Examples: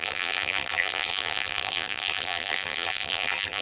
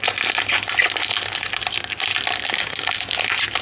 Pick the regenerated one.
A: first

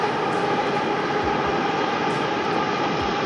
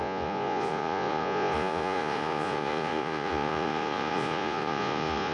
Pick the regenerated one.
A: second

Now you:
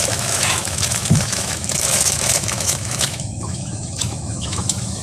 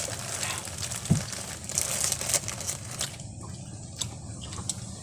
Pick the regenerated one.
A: first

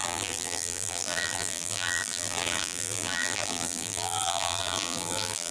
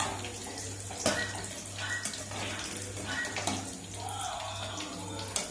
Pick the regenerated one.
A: first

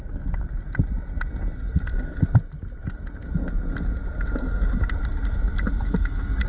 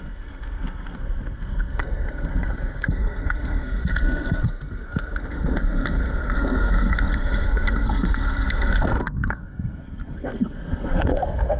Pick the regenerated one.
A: second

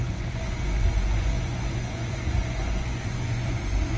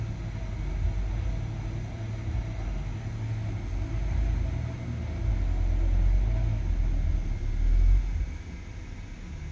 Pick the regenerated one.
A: first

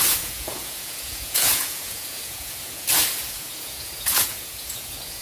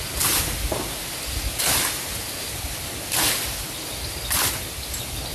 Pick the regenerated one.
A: first